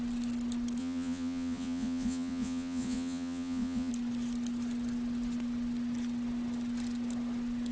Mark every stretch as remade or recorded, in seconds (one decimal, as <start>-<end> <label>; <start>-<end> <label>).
0.0-0.8 recorded; 0.8-3.9 remade; 3.9-7.7 recorded